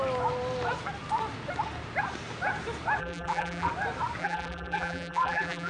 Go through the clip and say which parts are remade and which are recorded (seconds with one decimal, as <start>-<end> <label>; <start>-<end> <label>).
0.0-3.0 recorded; 3.0-3.7 remade; 3.7-4.2 recorded; 4.2-5.7 remade